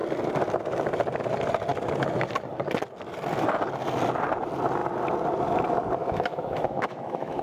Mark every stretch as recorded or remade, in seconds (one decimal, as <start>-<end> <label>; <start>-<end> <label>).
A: 0.0-6.0 recorded; 6.0-7.4 remade